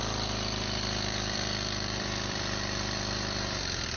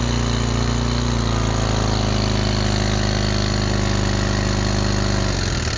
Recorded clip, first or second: second